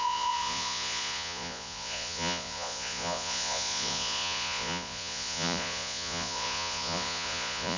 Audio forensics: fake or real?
fake